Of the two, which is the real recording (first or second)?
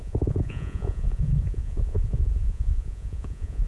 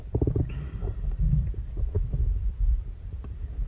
second